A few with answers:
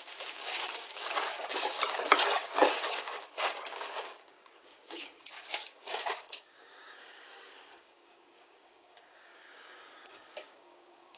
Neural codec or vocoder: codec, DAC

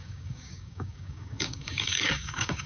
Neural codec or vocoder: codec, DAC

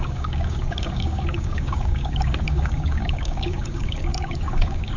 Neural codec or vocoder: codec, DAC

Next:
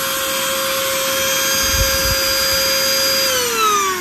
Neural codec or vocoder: none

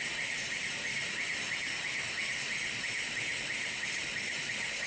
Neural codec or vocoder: none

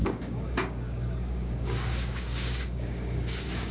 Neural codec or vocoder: codec, DAC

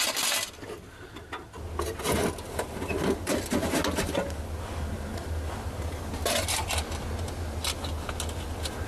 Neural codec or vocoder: none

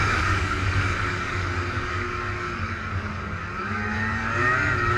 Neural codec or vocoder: codec, DAC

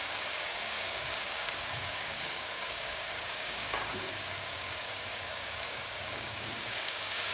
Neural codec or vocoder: codec, DAC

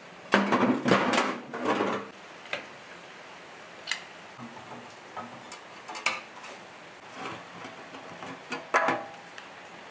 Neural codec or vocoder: none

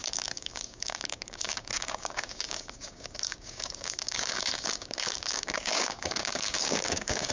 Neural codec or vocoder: codec, DAC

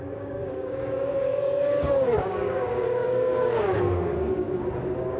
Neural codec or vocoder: codec, DAC